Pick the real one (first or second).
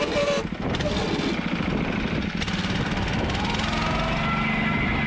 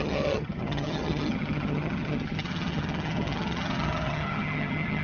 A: first